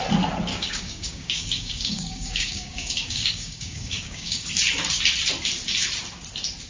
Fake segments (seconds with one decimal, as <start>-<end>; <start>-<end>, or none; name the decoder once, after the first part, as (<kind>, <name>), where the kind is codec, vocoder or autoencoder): 0.5-4.5 (codec, DAC)